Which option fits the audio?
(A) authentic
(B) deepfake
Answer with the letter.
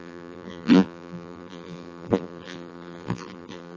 B